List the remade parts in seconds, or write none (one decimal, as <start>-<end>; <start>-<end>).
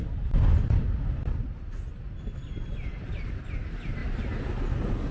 none